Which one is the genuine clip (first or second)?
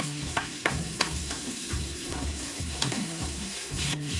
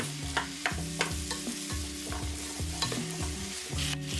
second